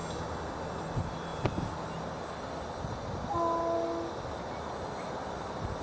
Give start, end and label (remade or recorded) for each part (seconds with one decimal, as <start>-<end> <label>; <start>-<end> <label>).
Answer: 0.0-0.8 recorded; 0.8-5.8 remade